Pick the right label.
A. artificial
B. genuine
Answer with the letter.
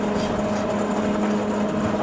B